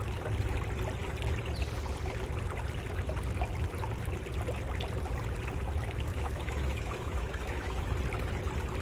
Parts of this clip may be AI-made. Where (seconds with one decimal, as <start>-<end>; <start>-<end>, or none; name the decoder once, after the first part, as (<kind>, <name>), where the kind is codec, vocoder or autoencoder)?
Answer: 6.1-7.9 (autoencoder, DAC-VAE)

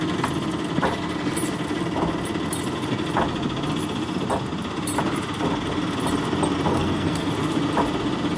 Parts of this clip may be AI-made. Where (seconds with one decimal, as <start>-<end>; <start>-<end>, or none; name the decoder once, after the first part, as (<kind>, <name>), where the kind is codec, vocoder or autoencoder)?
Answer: 6.7-7.3 (codec, SNAC)

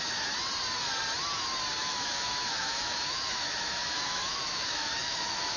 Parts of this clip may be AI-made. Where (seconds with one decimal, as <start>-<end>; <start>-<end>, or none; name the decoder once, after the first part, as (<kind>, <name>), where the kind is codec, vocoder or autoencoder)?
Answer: 1.8-5.6 (autoencoder, DAC-VAE)